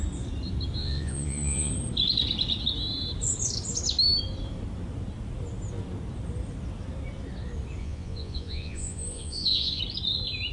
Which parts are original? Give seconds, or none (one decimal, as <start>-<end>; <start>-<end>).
0.0-0.8; 1.7-7.8; 9.8-10.5